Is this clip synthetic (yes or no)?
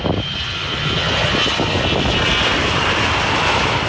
no